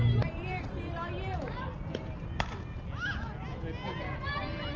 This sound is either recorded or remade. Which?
recorded